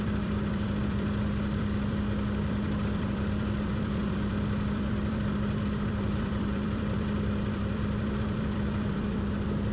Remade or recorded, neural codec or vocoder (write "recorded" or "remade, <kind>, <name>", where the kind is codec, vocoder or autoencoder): remade, vocoder, BigVGAN v2